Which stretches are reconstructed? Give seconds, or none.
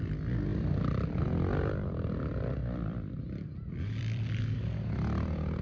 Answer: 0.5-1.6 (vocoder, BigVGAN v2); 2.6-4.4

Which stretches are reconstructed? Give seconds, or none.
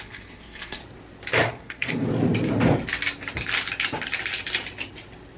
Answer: 0.0-0.8 (codec, SNAC); 1.5-2.1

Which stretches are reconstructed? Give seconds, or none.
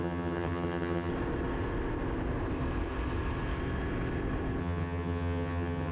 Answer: 0.0-1.1 (vocoder, HiFi-GAN); 4.6-5.9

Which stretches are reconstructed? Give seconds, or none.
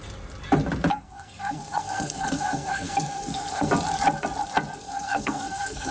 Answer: 0.9-3.7 (codec, SNAC); 4.8-5.9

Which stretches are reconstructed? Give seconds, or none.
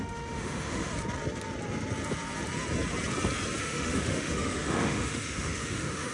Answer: 0.0-0.9 (autoencoder, DAC-VAE); 3.6-6.1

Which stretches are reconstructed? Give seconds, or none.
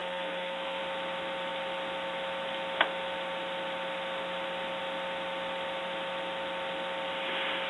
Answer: 0.0-0.8 (codec, SNAC)